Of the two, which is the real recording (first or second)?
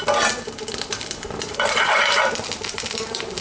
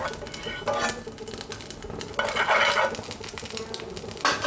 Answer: second